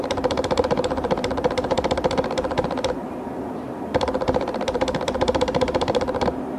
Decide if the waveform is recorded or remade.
remade